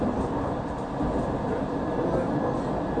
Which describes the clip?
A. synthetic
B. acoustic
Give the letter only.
A